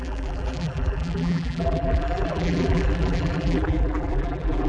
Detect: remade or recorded remade